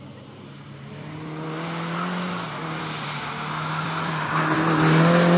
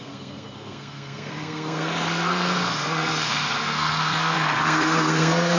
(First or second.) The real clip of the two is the first